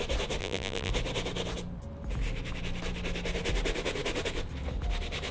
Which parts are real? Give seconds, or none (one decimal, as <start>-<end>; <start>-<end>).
0.0-0.4; 0.9-5.3